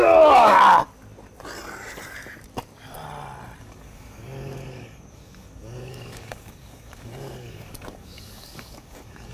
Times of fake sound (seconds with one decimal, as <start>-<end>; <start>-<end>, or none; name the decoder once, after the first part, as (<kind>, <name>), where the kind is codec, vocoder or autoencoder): 0.0-0.8 (codec, DAC); 3.6-9.3

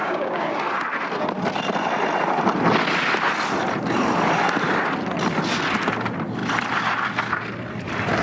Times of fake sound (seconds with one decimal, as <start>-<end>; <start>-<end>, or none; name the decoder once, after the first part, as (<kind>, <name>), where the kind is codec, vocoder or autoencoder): 0.0-0.6 (codec, DAC)

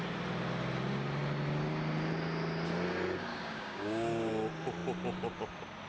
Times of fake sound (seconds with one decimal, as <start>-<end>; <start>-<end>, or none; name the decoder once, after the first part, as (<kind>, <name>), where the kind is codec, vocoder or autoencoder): 3.3-4.3 (codec, DAC)

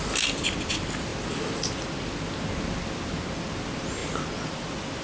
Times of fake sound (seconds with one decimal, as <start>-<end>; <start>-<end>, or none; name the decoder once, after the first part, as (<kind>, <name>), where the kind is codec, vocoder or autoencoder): none

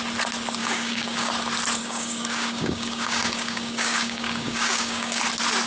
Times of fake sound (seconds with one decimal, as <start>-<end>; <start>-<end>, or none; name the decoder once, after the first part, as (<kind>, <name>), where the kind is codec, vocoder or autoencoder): 0.6-1.3 (codec, DAC); 1.8-5.2

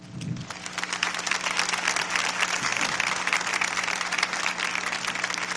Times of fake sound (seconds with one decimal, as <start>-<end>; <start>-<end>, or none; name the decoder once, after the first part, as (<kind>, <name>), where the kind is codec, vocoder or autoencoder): none

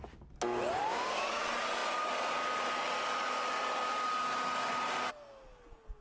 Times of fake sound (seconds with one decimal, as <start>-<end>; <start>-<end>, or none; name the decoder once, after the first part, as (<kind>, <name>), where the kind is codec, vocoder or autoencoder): 0.8-1.4 (codec, DAC)

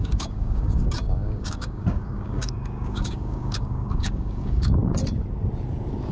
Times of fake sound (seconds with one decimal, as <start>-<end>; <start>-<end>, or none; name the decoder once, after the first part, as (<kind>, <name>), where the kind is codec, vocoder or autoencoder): 0.0-4.8 (codec, DAC)